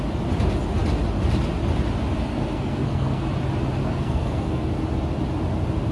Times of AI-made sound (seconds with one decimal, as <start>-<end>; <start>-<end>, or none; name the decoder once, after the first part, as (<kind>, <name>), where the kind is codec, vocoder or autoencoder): 2.3-3.3 (codec, SNAC); 3.8-4.7